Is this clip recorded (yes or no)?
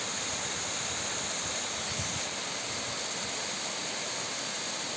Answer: yes